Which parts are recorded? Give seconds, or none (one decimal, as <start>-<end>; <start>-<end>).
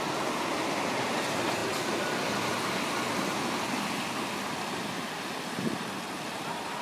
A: none